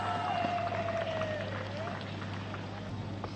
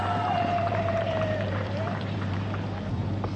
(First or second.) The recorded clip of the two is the first